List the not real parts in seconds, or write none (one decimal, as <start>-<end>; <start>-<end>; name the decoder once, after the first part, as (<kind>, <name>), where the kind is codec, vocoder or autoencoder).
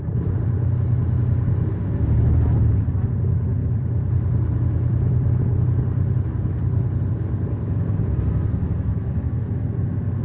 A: 3.6-5.4 (vocoder, BigVGAN v2)